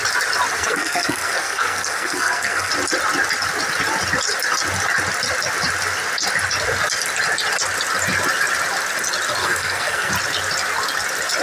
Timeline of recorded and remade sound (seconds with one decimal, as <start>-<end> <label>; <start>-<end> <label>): 0.0-0.5 recorded; 0.5-2.7 remade; 2.7-9.4 recorded; 9.4-10.1 remade; 10.1-11.4 recorded